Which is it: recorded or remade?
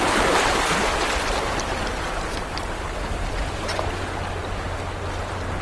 recorded